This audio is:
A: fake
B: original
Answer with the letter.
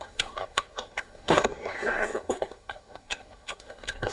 A